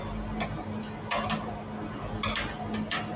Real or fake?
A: real